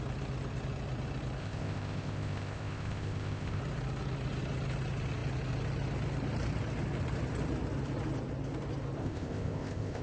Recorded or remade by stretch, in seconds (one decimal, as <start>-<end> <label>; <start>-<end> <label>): 0.0-1.4 recorded; 1.4-3.6 remade; 3.6-9.0 recorded; 9.0-10.0 remade